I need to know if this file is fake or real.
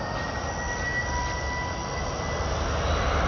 real